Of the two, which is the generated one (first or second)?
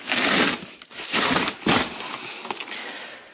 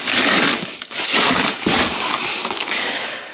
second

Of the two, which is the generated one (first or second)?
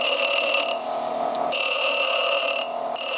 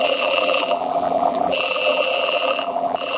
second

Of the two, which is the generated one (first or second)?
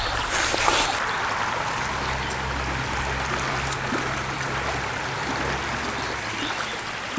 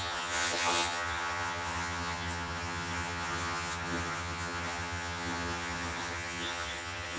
second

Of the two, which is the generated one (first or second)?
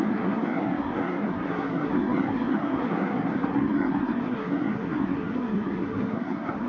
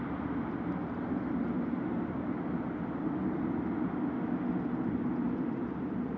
first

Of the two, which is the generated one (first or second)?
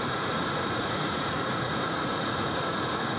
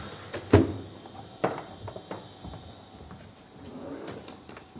first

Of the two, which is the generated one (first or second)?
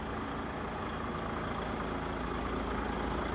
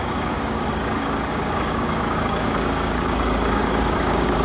second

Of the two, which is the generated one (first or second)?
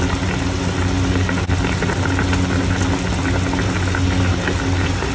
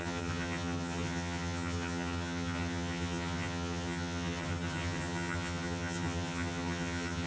second